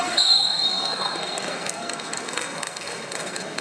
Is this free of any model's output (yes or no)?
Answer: no